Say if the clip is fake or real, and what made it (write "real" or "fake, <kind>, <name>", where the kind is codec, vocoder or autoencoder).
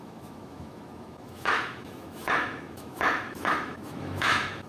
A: fake, autoencoder, DAC-VAE